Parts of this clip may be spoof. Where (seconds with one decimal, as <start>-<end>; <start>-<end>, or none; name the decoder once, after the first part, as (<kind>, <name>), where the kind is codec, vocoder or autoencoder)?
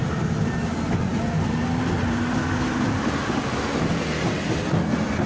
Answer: none